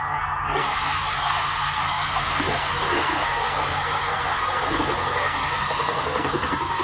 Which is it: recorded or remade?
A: remade